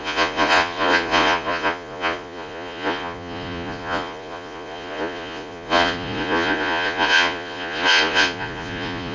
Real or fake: fake